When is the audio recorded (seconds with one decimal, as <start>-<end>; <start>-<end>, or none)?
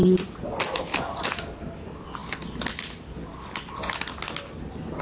0.6-5.0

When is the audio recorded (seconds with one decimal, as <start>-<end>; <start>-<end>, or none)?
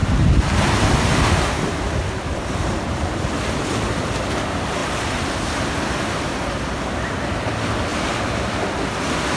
3.4-4.8; 6.3-7.9; 8.5-9.4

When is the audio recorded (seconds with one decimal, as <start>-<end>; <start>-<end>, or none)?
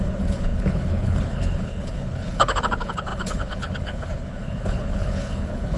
none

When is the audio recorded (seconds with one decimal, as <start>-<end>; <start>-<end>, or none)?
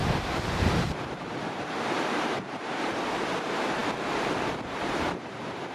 none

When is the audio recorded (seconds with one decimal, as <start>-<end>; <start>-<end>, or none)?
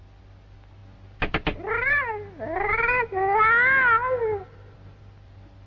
0.0-5.7